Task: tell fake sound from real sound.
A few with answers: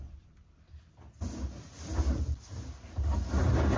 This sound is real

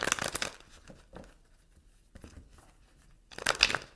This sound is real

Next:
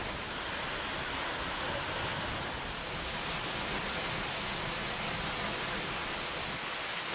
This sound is real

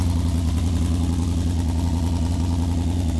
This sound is real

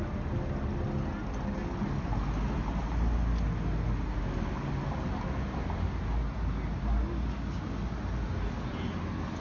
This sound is real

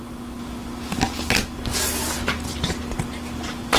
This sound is real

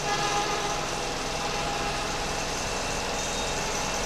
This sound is real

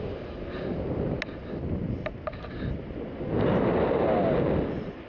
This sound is real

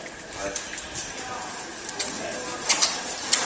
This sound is real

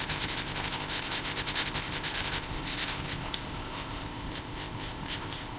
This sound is fake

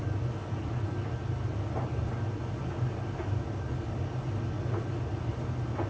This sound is real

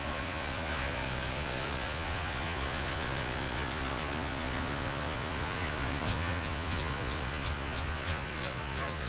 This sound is fake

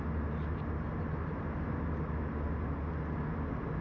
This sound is real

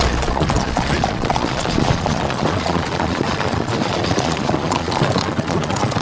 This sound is fake